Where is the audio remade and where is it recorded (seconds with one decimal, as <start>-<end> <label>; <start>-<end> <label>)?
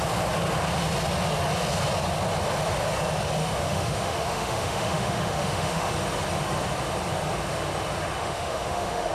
0.0-3.4 recorded; 3.4-5.9 remade; 5.9-8.2 recorded; 8.2-9.1 remade